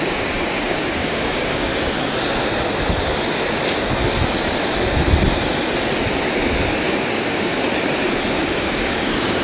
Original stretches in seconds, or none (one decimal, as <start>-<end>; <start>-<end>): 1.7-6.8; 7.5-8.3